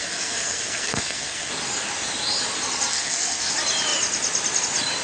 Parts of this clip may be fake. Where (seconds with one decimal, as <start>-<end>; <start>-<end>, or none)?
0.0-1.5; 2.9-3.5